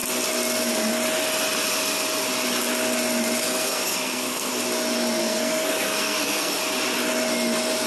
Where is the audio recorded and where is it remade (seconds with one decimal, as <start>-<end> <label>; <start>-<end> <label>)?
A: 0.0-3.4 recorded; 3.4-4.5 remade; 4.5-5.2 recorded; 5.2-6.6 remade; 6.6-7.9 recorded